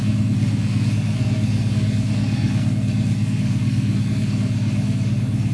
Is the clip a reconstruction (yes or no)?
yes